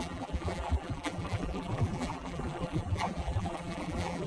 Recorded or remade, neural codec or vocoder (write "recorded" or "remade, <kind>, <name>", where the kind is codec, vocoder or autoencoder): remade, vocoder, BigVGAN v2